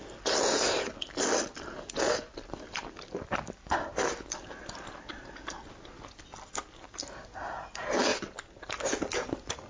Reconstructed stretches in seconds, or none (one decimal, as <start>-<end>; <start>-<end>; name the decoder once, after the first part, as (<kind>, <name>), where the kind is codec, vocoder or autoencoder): none